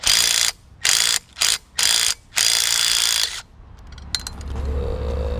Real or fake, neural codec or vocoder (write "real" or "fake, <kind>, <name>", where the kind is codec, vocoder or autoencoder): real